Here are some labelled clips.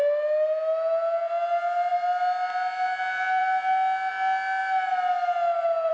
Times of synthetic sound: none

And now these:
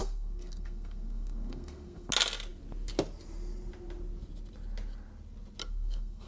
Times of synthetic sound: 0.0-2.1 (codec, SNAC); 5.6-6.3

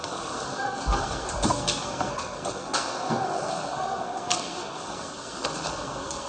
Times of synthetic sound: 0.0-6.3 (codec, SNAC)

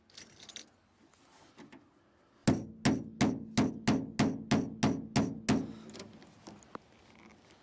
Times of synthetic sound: none

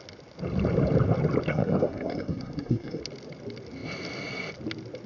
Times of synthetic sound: 1.5-3.0 (codec, SNAC)

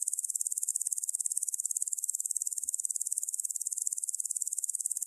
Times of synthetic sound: none

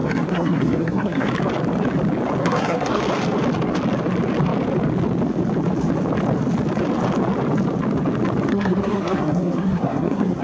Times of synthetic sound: 0.0-1.3 (codec, SNAC); 2.4-3.0; 8.5-10.4

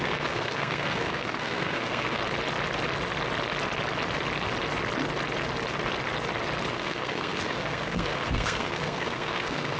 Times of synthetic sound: 0.0-2.2 (codec, SNAC); 6.7-9.8